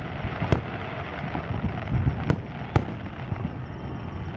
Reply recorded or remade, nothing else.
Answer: recorded